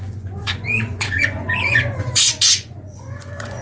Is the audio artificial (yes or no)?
yes